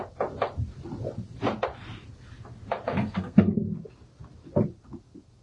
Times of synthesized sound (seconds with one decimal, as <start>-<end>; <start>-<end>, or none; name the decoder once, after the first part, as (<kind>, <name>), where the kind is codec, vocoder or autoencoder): 3.0-3.6 (codec, SNAC)